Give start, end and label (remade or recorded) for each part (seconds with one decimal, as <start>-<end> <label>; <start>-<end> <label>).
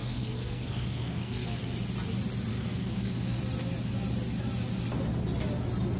0.0-1.6 remade; 1.6-2.5 recorded; 2.5-3.4 remade; 3.4-6.0 recorded